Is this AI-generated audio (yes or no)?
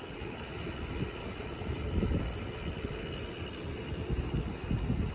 no